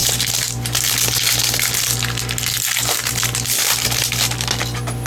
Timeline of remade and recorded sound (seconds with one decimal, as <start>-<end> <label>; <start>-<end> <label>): 0.0-5.1 recorded